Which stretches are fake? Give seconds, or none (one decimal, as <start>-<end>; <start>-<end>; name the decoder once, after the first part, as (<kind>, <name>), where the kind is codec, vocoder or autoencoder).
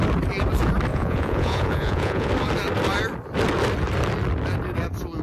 0.9-2.3 (vocoder, Vocos)